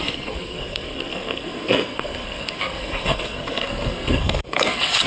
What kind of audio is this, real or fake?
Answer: fake